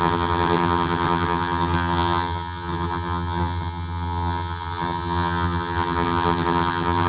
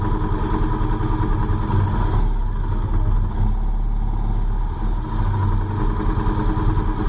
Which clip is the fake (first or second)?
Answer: first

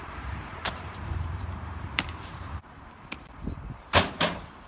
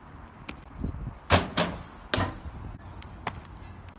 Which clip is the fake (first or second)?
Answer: first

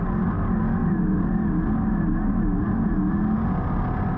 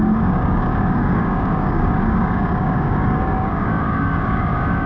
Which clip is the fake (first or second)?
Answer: second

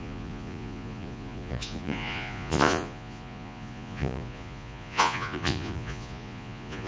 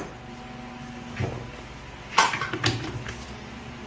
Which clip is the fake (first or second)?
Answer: first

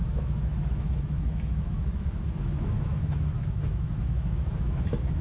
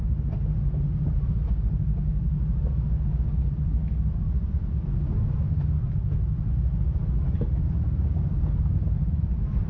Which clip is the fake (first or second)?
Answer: first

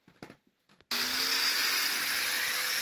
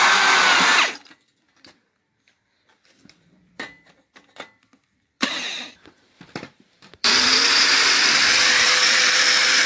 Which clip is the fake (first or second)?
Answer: second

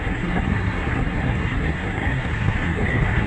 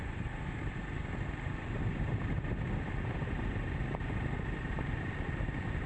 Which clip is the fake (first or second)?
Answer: first